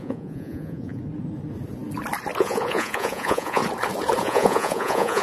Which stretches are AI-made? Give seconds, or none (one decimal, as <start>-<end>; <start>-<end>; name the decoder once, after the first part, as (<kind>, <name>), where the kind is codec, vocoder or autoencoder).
0.0-1.0 (vocoder, Vocos); 2.4-3.6; 4.2-5.2

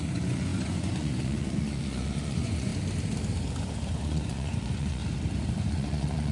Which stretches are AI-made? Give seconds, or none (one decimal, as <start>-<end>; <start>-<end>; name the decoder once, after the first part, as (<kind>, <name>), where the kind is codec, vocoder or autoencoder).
0.0-2.7 (vocoder, Vocos); 4.0-5.0; 5.7-6.3

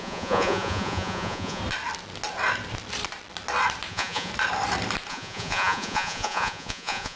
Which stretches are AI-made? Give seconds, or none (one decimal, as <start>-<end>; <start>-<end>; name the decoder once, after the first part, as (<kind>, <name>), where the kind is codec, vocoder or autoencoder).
0.0-1.6 (vocoder, Vocos); 3.9-4.3; 5.1-7.2

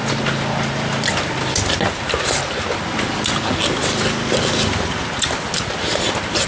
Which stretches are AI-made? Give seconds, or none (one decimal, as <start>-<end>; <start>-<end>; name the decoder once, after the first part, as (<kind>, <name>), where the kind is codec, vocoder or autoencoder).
none

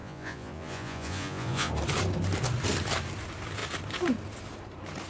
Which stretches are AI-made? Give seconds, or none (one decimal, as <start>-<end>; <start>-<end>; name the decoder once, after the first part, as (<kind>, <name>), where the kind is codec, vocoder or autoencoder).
0.0-1.7 (vocoder, Vocos)